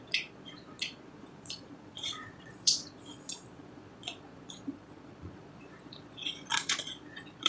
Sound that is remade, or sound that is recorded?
remade